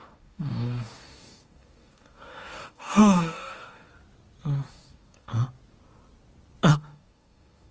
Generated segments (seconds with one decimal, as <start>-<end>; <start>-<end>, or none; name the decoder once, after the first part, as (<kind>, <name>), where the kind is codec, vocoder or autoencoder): 0.0-3.9 (codec, DAC); 4.7-5.3; 6.7-7.7